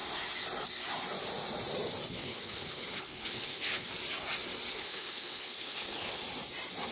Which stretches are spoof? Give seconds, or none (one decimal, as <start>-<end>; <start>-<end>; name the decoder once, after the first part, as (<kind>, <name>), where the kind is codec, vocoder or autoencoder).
2.1-3.9 (codec, HILCodec); 4.7-6.2